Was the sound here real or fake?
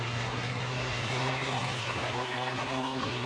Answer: fake